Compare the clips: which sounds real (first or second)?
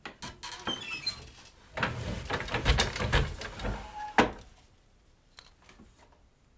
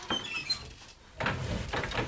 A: first